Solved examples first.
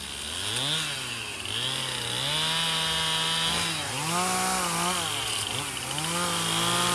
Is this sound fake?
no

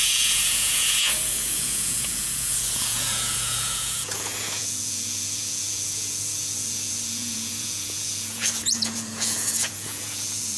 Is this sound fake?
yes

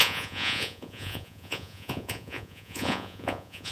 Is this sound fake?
yes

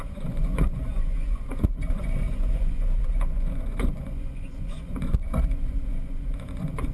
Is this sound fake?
yes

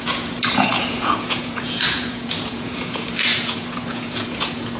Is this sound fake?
yes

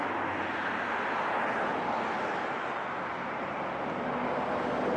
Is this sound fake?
no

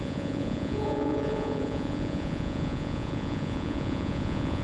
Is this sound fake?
yes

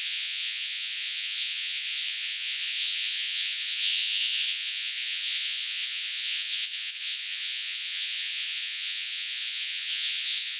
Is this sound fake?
yes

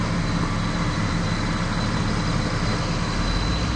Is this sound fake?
no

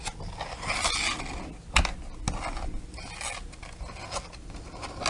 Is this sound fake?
no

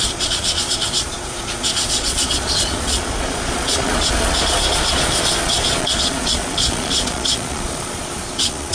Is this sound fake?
yes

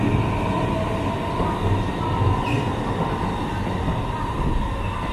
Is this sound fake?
no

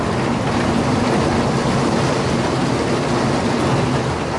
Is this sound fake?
no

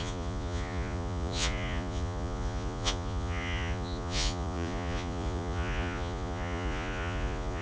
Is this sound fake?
yes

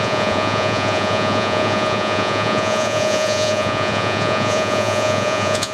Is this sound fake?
yes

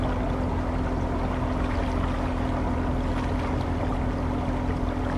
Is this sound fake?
no